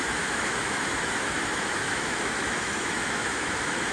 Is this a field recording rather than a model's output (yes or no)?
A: no